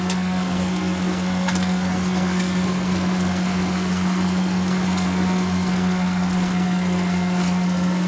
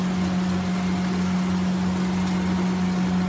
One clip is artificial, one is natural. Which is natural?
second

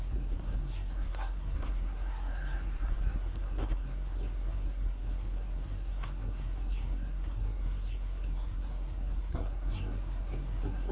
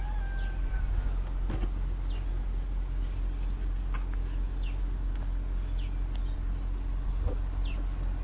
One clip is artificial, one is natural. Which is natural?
second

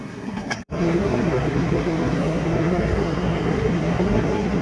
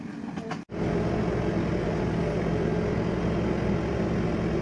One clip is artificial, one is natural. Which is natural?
second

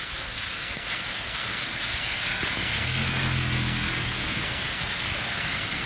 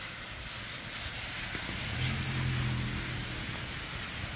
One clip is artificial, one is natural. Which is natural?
second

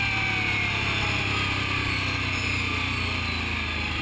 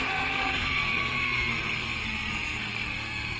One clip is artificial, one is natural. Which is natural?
first